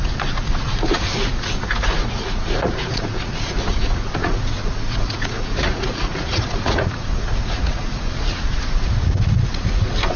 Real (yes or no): no